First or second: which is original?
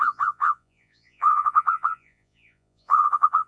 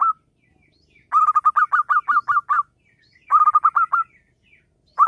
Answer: second